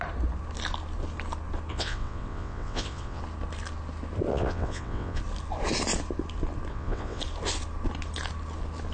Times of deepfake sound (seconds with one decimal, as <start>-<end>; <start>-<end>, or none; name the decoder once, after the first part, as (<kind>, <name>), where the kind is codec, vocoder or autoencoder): 1.7-3.2 (vocoder, WaveNeXt); 4.3-5.2; 6.7-7.2